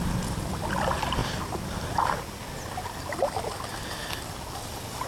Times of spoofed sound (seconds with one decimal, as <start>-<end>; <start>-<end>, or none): 0.0-1.2; 1.7-2.4; 3.7-5.1